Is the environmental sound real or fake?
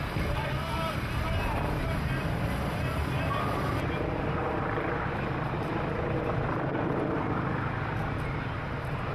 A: real